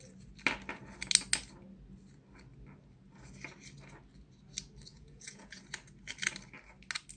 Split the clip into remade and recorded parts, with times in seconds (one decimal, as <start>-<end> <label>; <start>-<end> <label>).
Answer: 0.0-4.9 recorded; 4.9-5.6 remade; 5.6-7.2 recorded